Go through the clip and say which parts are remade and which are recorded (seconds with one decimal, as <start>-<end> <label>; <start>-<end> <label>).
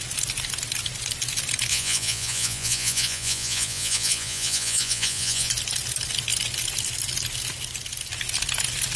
0.0-1.7 recorded; 1.7-5.5 remade; 5.5-9.0 recorded